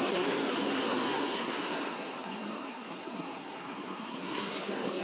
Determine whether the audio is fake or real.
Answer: fake